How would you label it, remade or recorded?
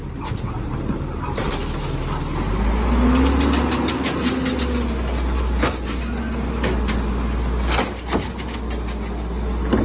recorded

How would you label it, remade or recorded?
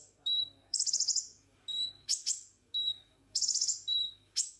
remade